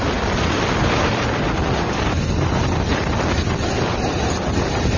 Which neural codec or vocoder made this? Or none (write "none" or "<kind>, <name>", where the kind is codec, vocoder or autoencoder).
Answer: none